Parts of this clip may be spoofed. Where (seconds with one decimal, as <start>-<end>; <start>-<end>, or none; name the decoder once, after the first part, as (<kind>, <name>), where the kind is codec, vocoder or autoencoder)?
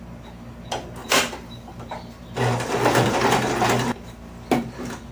1.0-4.1 (vocoder, BigVGAN v2)